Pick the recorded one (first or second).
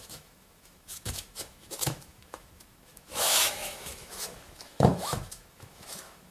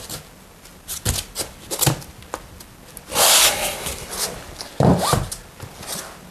second